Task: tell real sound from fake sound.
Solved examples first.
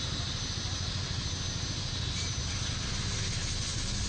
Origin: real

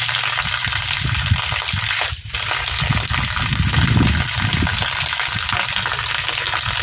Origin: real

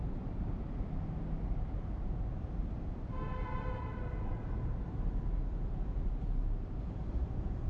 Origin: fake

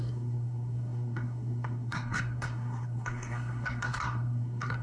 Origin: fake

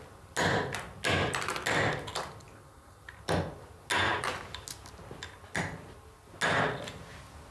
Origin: real